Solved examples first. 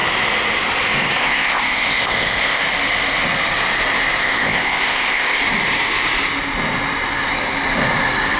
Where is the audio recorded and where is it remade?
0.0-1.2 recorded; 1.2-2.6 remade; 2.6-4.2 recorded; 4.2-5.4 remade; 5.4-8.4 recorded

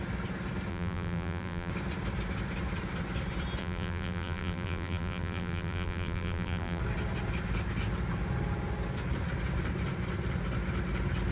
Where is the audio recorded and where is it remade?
0.0-0.7 recorded; 0.7-1.7 remade; 1.7-3.6 recorded; 3.6-6.8 remade; 6.8-11.3 recorded

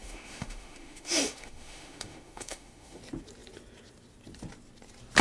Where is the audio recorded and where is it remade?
0.0-3.0 remade; 3.0-5.2 recorded